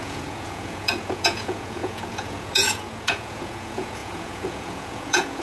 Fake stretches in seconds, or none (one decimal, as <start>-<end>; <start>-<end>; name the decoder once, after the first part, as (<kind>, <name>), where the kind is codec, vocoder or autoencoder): 0.0-5.4 (vocoder, Vocos)